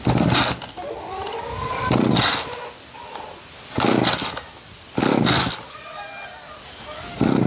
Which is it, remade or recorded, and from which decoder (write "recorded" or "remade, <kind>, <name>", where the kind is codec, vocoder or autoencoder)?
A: recorded